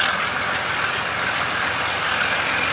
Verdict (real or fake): real